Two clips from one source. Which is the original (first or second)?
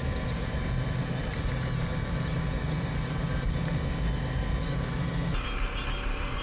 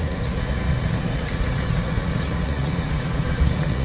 first